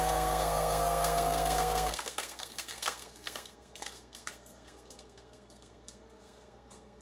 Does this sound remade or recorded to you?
remade